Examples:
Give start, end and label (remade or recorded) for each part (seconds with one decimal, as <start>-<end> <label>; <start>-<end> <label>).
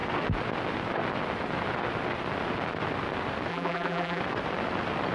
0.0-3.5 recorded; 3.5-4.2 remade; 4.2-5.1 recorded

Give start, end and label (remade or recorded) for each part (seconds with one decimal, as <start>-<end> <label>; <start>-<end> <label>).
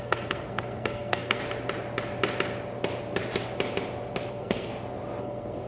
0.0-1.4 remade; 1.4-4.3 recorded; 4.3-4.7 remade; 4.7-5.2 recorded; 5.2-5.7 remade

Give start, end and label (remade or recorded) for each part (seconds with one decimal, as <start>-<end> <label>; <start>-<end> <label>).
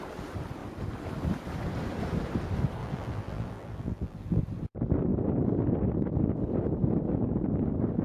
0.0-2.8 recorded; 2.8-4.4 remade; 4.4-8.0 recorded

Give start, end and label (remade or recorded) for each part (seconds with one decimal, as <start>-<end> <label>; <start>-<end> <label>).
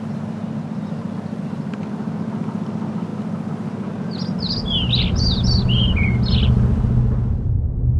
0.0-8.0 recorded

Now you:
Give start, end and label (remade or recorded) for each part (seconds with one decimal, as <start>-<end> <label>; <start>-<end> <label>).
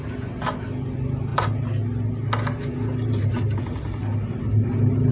0.0-5.1 recorded